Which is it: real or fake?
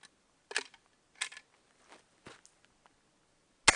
real